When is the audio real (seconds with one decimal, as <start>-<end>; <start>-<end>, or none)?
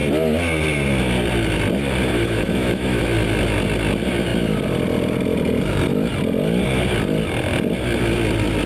0.0-2.1; 3.0-8.7